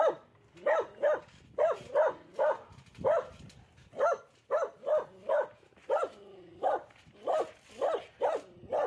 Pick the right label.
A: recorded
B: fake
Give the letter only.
B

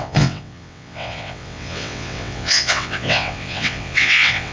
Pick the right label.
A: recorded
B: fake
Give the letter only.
B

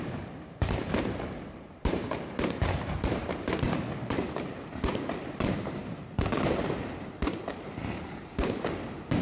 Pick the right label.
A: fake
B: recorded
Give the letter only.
A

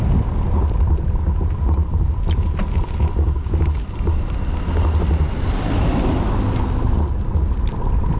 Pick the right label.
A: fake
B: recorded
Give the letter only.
B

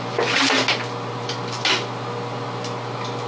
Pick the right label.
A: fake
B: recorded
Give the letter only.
B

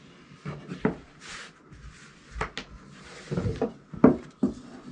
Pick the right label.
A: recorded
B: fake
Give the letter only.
A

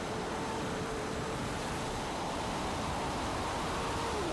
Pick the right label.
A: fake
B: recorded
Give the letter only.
A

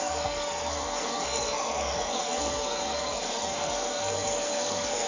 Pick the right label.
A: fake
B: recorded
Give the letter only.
A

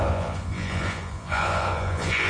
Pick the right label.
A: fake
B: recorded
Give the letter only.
A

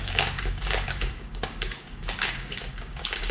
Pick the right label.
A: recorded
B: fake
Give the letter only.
B